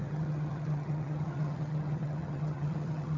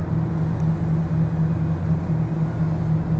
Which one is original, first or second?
second